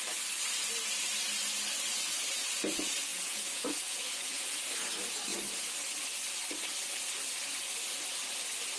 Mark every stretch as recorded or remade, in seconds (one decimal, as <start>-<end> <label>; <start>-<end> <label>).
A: 0.0-3.1 recorded; 3.1-4.6 remade; 4.6-8.8 recorded